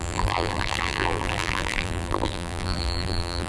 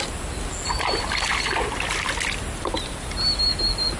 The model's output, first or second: first